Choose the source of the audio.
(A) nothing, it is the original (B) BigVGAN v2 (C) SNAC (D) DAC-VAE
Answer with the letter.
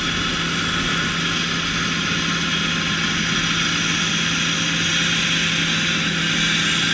A